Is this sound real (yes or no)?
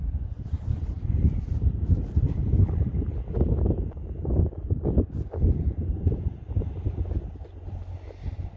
yes